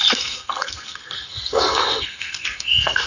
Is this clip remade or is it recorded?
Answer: remade